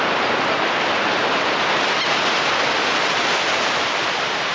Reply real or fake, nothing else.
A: real